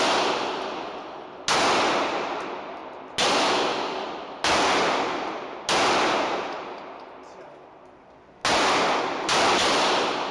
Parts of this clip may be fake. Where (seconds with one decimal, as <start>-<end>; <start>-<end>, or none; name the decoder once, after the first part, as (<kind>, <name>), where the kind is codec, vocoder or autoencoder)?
none